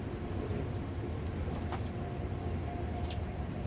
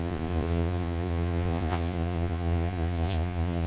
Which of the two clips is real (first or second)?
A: first